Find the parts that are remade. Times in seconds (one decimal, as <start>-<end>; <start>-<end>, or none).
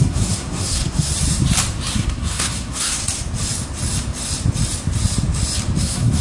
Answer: 0.0-1.1; 1.9-3.0; 5.8-6.2